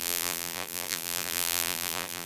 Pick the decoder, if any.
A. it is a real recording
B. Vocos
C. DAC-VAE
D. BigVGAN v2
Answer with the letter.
D